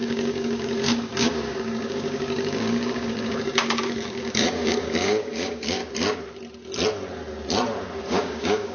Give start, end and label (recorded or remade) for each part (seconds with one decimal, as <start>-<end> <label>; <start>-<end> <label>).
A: 0.0-5.8 remade; 5.8-8.0 recorded; 8.0-8.7 remade